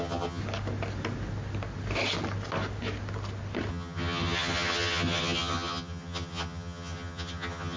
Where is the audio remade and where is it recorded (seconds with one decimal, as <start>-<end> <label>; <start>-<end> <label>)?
0.0-0.4 remade; 0.4-3.7 recorded; 3.7-7.8 remade